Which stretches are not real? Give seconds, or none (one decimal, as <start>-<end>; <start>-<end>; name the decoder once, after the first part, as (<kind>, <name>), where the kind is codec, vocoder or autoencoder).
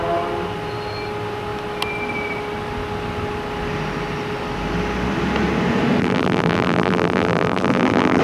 6.0-8.2 (vocoder, BigVGAN v2)